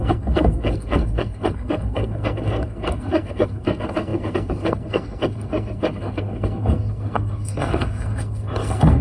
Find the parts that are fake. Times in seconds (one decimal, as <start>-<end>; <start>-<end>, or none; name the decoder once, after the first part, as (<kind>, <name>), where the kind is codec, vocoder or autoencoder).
0.0-9.0 (codec, SNAC)